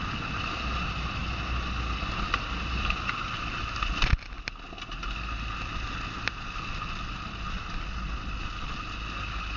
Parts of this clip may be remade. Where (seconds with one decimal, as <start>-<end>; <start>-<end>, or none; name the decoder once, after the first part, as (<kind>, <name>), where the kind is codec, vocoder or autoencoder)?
none